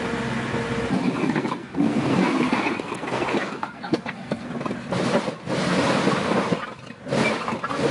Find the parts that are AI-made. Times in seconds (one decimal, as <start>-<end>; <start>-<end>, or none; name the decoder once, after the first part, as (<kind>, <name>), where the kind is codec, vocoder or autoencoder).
1.2-4.5 (codec, SNAC)